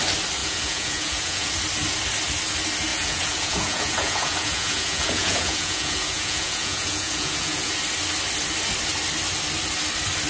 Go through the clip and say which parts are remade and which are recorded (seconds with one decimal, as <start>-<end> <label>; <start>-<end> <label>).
0.0-0.4 recorded; 0.4-1.5 remade; 1.5-2.9 recorded; 2.9-7.7 remade; 7.7-10.3 recorded